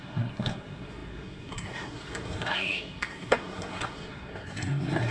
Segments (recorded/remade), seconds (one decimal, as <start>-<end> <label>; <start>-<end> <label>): 0.0-5.1 remade